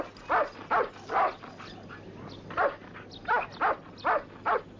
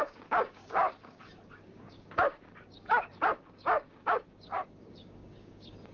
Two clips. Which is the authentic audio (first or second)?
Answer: first